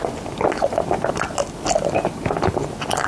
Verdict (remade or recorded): recorded